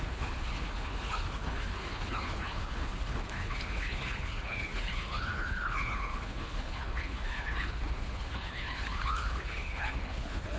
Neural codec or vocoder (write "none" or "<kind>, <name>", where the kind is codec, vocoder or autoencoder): codec, HILCodec